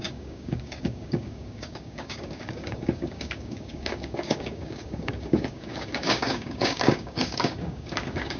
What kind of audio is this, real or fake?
fake